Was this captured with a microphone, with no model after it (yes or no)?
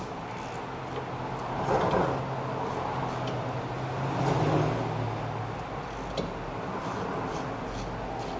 yes